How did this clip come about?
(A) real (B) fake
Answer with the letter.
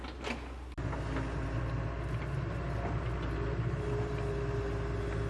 A